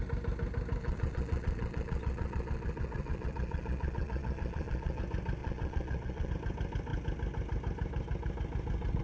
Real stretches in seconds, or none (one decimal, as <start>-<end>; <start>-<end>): 0.0-0.8; 5.0-5.4; 6.3-9.0